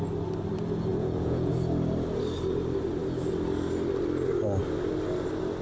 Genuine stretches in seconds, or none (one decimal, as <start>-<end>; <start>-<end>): 0.0-0.9; 1.5-5.6